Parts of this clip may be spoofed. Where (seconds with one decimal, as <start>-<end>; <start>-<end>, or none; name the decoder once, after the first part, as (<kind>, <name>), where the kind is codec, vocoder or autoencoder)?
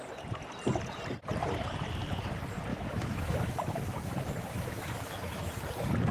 2.7-5.5 (autoencoder, DAC-VAE)